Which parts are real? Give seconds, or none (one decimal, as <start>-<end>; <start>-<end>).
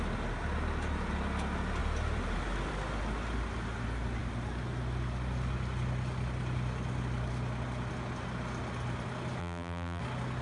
0.0-9.4; 10.0-10.4